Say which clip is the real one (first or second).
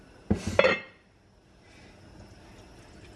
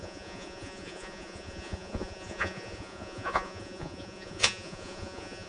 first